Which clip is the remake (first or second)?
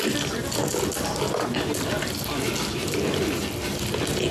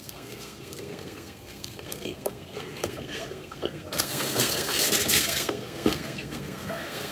second